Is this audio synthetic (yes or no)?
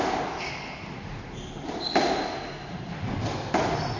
no